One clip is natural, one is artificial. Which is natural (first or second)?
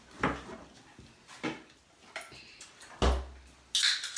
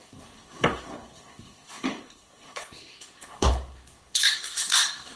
first